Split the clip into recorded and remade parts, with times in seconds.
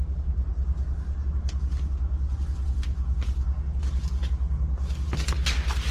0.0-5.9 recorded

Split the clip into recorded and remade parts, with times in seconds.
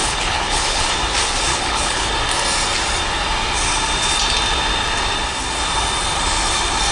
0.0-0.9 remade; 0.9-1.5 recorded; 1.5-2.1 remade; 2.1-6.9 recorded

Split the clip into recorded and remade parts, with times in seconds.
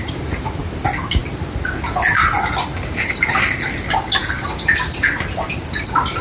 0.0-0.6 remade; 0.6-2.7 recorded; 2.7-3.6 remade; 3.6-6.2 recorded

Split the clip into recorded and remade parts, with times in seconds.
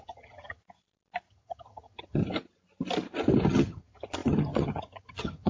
0.0-0.6 remade; 0.6-1.3 recorded; 1.3-2.2 remade; 2.2-3.5 recorded; 3.5-5.5 remade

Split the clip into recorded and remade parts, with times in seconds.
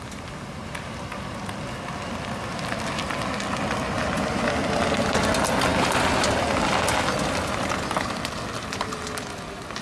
0.0-9.8 recorded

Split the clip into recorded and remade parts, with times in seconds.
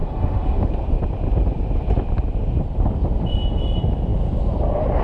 0.0-0.7 remade; 0.7-5.0 recorded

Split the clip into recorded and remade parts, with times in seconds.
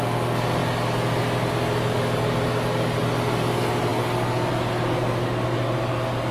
0.0-6.3 recorded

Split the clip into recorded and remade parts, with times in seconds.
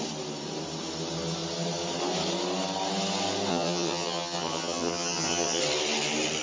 0.0-3.5 recorded; 3.5-5.6 remade; 5.6-6.4 recorded